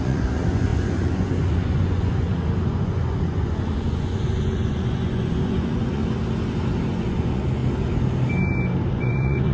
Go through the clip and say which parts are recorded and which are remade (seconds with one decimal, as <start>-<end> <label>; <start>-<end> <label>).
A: 0.0-6.0 remade; 6.0-6.9 recorded; 6.9-7.6 remade; 7.6-8.9 recorded; 8.9-9.5 remade